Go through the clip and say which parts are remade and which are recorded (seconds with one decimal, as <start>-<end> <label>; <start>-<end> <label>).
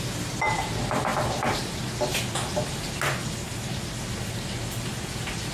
0.0-5.5 recorded